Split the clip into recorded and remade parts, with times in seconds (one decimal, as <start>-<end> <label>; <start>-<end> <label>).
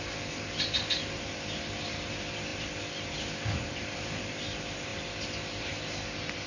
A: 0.0-6.5 recorded